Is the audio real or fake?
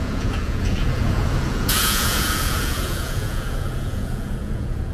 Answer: fake